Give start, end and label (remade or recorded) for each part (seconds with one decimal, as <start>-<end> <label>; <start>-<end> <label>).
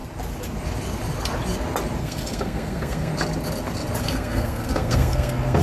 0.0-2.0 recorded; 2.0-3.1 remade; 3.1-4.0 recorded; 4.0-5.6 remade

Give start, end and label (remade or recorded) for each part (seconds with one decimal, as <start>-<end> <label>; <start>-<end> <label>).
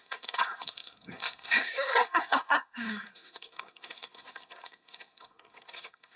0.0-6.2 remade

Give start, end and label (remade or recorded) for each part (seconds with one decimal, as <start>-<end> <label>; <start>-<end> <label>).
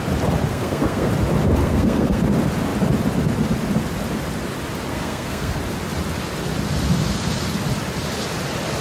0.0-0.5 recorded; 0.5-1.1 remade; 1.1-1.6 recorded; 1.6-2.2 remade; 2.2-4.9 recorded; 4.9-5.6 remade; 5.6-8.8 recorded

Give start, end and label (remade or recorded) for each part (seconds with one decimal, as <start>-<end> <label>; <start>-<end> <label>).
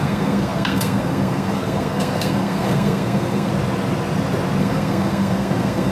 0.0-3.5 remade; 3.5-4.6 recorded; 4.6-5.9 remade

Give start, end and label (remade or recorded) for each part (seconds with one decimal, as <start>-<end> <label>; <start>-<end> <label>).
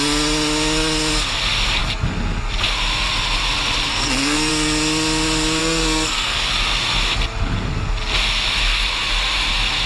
0.0-3.9 recorded; 3.9-4.5 remade; 4.5-5.6 recorded; 5.6-6.5 remade; 6.5-9.9 recorded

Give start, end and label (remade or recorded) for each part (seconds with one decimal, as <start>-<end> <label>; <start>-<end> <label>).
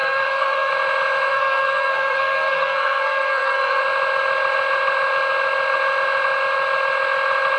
0.0-0.7 remade; 0.7-1.3 recorded; 1.3-3.8 remade; 3.8-7.6 recorded